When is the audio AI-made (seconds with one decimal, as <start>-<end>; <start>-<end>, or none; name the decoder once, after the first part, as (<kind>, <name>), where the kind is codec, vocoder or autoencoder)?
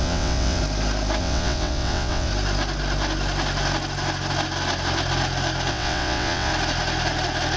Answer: 0.0-0.6 (vocoder, WaveNeXt); 1.2-2.3; 5.7-6.5